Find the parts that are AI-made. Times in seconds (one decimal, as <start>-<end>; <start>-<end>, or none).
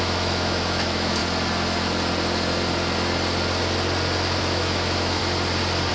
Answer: 0.0-1.2; 4.4-5.2